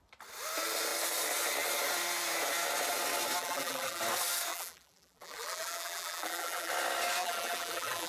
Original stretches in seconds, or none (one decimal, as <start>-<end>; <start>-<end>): 0.0-3.4; 4.0-4.5; 6.7-7.2